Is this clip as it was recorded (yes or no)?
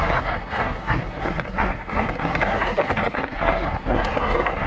no